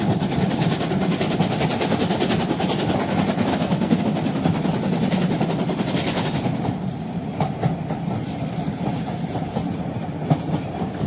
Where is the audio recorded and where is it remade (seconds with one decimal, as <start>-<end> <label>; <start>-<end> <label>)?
0.0-3.5 recorded; 3.5-4.0 remade; 4.0-11.1 recorded